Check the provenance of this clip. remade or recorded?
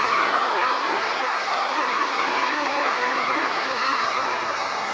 remade